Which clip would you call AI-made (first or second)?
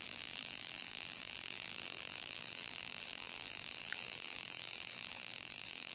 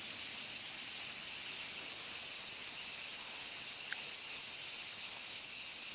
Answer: first